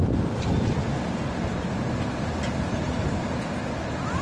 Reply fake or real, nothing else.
real